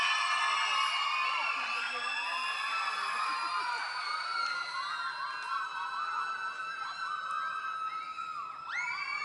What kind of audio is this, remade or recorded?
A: recorded